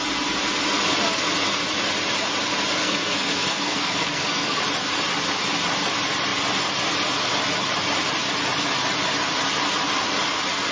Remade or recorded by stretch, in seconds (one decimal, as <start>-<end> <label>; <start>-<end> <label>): 0.0-2.8 recorded; 2.8-4.6 remade; 4.6-10.7 recorded